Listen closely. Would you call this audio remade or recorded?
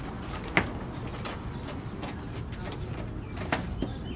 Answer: recorded